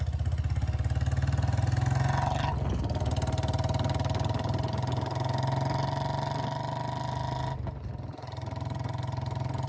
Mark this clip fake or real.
real